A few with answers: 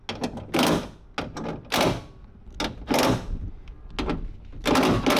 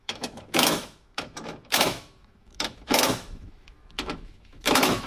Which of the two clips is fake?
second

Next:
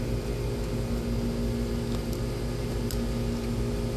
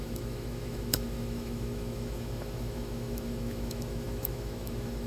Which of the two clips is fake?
second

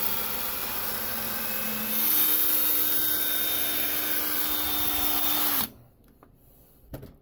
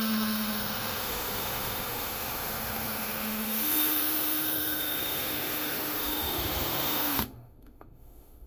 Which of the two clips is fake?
second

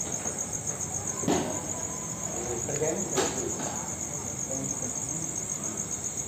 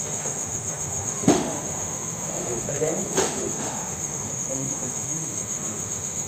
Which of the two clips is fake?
second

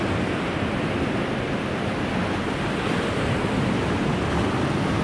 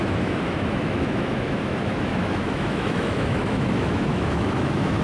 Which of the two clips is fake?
second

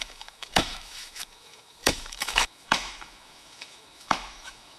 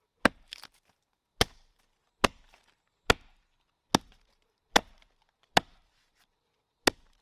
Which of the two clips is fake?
first